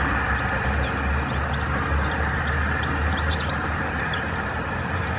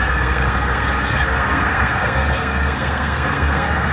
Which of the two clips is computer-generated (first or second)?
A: second